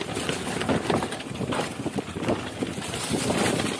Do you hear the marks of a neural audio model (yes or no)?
no